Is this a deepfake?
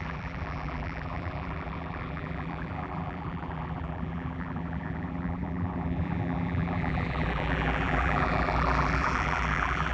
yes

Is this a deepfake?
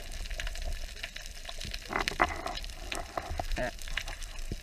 yes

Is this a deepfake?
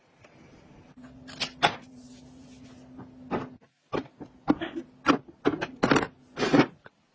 no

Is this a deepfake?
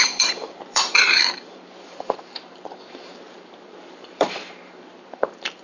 yes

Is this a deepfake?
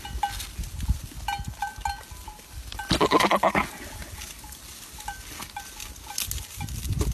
no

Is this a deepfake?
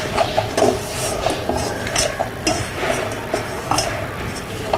no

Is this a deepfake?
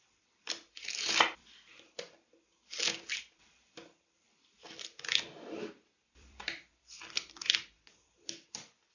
yes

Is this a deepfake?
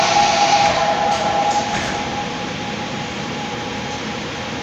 yes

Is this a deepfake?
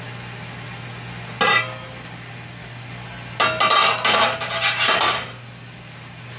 no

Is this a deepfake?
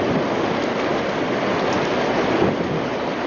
no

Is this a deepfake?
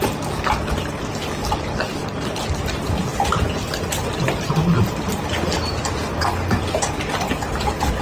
no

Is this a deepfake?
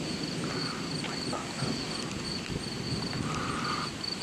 no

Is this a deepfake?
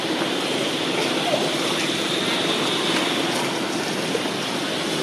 no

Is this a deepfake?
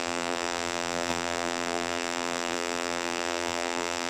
yes